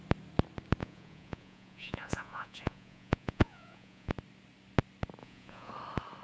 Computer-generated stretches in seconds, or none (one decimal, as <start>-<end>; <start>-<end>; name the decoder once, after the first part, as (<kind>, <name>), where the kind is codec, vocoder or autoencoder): 0.8-4.1 (vocoder, Vocos); 5.2-5.7